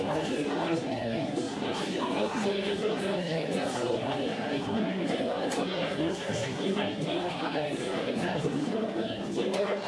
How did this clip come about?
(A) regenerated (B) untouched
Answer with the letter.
A